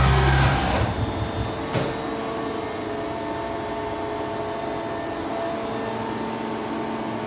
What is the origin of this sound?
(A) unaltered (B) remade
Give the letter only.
A